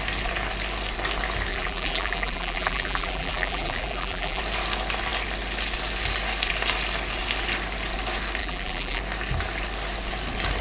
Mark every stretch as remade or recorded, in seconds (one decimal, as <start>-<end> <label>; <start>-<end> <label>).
0.0-1.5 recorded; 1.5-4.4 remade; 4.4-8.4 recorded; 8.4-9.0 remade; 9.0-10.6 recorded